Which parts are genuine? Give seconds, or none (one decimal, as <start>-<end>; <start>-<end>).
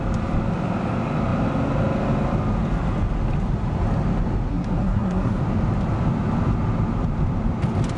0.0-4.5; 5.4-8.0